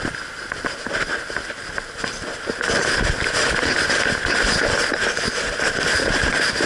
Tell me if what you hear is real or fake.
real